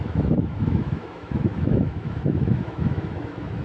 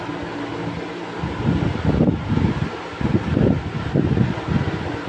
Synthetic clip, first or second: first